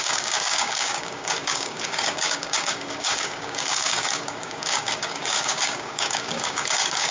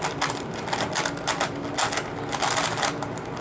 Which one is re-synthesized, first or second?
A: first